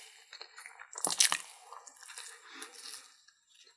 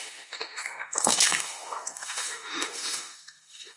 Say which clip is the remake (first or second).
second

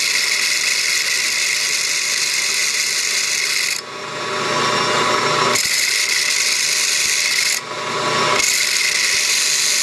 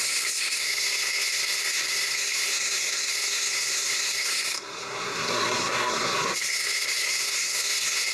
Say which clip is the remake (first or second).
second